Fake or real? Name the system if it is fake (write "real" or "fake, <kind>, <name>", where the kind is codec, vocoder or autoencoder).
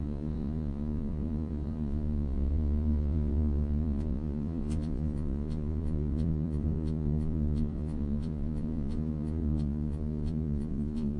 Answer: fake, vocoder, Vocos